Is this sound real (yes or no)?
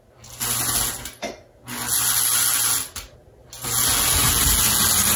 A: yes